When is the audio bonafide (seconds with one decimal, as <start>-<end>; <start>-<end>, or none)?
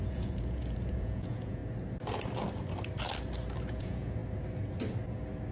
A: 1.6-3.7; 4.2-5.5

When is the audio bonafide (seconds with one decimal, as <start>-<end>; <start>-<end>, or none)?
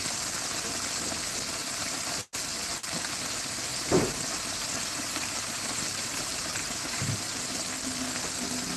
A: 0.0-1.6; 2.2-3.7; 7.6-8.8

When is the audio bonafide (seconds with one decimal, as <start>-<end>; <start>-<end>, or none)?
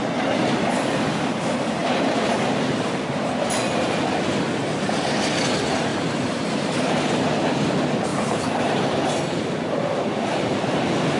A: 0.0-1.8; 3.3-5.9; 6.9-8.1; 10.6-11.2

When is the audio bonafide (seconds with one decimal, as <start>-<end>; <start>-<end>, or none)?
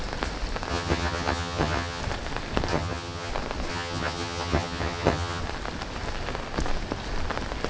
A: 0.0-0.7; 2.0-2.7; 3.3-3.7; 5.4-7.7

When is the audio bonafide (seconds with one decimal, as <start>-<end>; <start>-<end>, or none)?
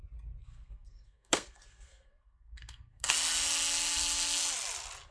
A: 0.0-0.4; 3.1-5.1